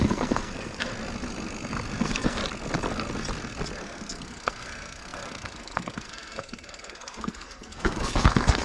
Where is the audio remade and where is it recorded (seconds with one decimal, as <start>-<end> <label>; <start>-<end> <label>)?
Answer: 0.0-0.9 remade; 0.9-2.0 recorded; 2.0-2.4 remade; 2.4-3.8 recorded; 3.8-8.6 remade